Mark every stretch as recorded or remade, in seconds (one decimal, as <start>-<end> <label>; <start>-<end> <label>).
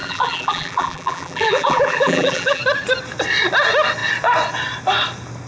0.0-2.6 remade; 2.6-5.5 recorded